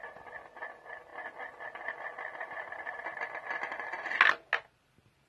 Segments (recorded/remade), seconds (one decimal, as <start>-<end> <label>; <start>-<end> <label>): 0.0-5.3 recorded